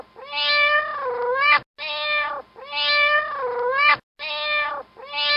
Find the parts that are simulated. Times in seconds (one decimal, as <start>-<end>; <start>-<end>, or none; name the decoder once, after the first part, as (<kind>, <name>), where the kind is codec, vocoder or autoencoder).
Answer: none